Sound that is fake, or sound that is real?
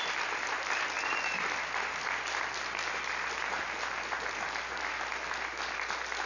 real